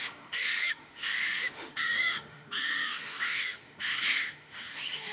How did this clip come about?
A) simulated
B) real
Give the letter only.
A